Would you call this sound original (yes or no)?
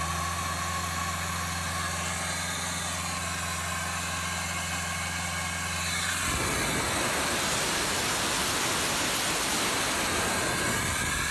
yes